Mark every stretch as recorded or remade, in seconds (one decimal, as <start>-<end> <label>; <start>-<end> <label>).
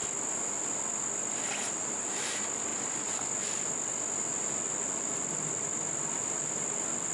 0.0-7.1 recorded